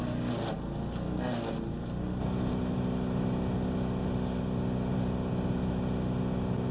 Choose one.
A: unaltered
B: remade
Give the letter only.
A